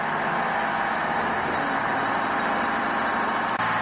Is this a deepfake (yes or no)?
no